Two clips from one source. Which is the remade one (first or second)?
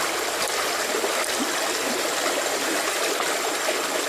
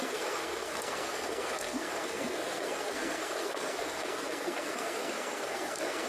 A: second